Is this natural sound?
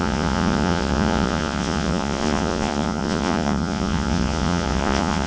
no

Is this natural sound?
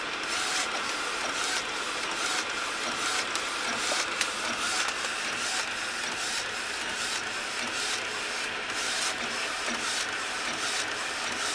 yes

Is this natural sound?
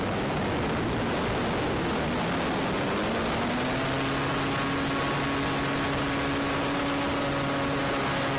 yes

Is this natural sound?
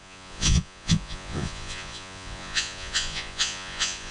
no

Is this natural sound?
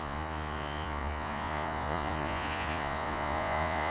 no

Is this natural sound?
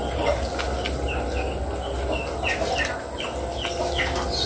yes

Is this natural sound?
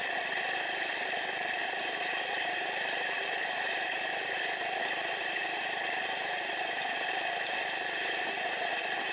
yes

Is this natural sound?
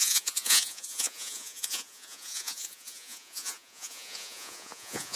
no